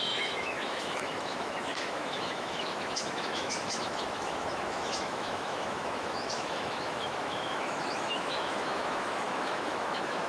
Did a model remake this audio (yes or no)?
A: yes